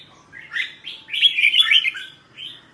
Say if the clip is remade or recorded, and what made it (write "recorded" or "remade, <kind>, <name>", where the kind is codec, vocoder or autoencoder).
recorded